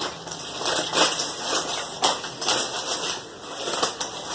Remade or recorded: recorded